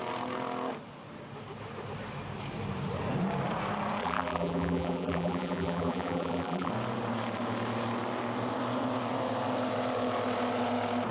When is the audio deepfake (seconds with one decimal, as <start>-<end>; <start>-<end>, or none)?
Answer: 4.0-6.7